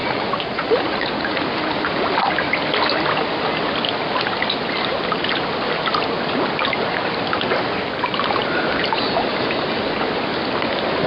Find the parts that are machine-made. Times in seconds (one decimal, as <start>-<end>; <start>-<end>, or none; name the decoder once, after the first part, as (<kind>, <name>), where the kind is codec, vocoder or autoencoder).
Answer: 0.0-1.4 (vocoder, Vocos)

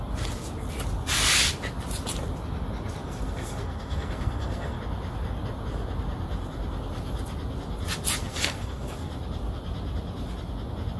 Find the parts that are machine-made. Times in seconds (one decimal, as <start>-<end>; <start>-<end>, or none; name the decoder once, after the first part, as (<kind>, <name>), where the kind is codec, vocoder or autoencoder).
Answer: 3.0-4.8 (codec, SNAC); 8.2-9.1

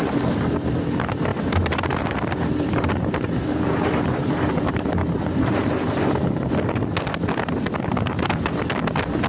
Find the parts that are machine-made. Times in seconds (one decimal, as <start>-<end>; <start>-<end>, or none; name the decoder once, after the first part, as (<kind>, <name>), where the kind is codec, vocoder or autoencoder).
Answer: 1.3-6.5 (vocoder, BigVGAN v2)

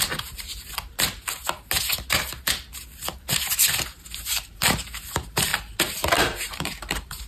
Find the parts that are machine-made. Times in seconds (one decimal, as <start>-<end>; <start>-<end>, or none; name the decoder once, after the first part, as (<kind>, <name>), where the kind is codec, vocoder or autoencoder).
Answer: 0.0-0.5 (vocoder, BigVGAN v2); 4.0-5.5; 6.2-7.3

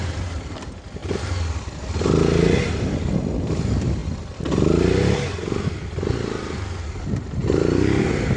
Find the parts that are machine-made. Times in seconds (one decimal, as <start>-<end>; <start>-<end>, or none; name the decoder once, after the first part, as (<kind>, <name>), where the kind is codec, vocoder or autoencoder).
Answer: none

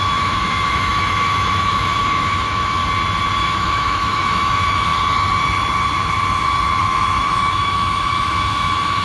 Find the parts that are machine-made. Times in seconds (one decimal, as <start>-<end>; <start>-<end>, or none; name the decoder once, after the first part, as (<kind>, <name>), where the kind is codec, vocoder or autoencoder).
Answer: 0.0-2.8 (autoencoder, DAC-VAE); 3.4-4.9; 6.8-9.0

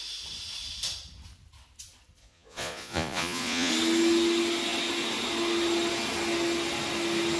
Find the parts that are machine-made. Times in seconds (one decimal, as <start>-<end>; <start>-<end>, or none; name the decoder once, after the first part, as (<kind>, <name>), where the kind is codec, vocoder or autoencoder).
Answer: 2.2-3.7 (vocoder, Vocos)

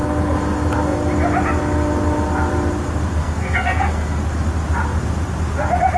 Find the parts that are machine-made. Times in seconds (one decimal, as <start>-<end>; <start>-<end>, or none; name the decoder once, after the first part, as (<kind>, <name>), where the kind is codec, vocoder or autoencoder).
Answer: 3.2-4.2 (codec, SNAC)